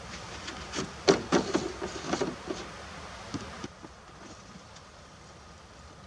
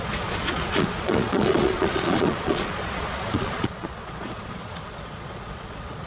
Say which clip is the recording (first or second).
first